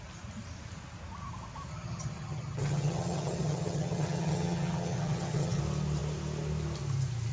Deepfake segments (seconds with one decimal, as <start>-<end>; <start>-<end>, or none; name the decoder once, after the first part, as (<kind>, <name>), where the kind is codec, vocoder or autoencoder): 1.7-5.6 (vocoder, HiFi-GAN)